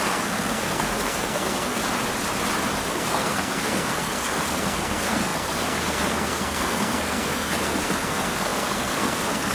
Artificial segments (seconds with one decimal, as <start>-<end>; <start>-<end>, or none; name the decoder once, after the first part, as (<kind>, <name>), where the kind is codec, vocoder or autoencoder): 0.0-1.8 (codec, SNAC); 2.9-9.5